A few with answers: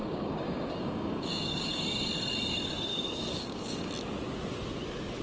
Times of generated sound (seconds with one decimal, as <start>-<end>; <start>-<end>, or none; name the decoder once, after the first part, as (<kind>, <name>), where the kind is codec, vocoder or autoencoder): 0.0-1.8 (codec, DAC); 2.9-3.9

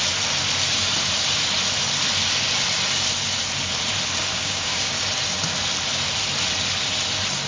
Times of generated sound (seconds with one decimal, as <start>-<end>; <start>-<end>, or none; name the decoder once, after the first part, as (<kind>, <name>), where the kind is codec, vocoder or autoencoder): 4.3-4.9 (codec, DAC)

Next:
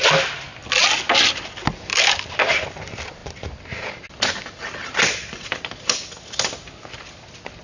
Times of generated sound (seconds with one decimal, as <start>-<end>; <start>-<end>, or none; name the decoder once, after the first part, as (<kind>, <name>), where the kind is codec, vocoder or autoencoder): none

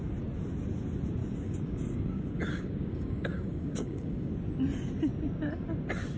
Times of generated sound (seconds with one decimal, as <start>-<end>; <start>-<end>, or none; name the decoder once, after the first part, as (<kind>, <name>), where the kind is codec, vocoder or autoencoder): 1.2-4.3 (codec, DAC)

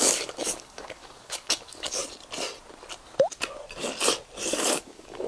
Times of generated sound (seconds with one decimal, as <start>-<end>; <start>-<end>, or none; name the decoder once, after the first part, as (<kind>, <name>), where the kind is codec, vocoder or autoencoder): 0.0-2.0 (codec, DAC); 4.5-5.3

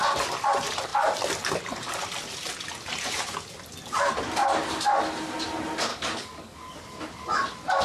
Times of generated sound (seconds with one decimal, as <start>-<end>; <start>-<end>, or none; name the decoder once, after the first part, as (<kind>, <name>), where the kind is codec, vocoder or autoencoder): 5.9-6.8 (codec, DAC)

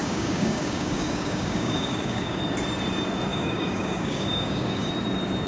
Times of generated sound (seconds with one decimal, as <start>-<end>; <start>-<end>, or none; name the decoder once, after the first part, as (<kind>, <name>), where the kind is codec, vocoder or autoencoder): 0.0-2.4 (codec, DAC); 3.3-4.9